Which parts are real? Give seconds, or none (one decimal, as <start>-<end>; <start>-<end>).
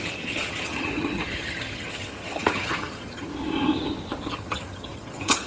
3.3-4.2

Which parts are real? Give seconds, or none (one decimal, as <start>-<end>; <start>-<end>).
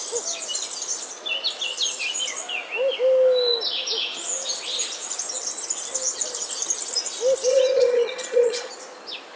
0.0-7.5; 8.7-9.4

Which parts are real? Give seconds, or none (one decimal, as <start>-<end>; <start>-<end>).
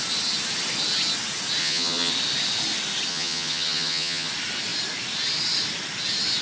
0.0-1.6; 2.1-3.1; 4.3-6.4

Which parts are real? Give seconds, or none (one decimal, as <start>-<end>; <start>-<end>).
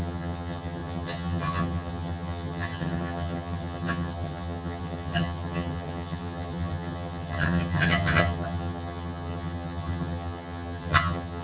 none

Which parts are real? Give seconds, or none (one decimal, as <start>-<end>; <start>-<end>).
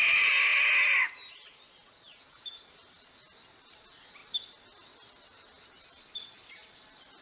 0.0-7.2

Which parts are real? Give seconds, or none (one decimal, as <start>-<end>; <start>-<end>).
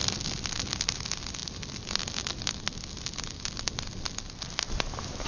0.0-5.3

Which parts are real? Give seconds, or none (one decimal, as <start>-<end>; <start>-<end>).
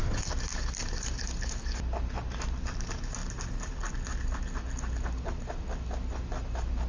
0.0-6.9